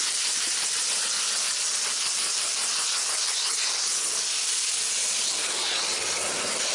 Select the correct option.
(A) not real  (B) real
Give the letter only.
B